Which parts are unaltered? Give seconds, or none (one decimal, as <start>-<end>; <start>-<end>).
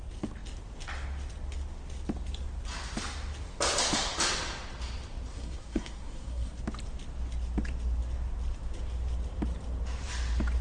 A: 0.0-5.3; 6.6-10.6